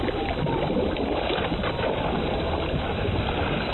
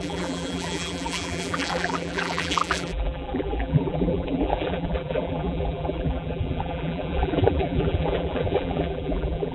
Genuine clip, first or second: first